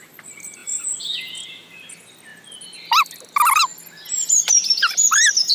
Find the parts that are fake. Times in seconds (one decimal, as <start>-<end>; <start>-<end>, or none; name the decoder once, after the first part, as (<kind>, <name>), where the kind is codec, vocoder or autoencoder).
0.6-1.8 (vocoder, Vocos)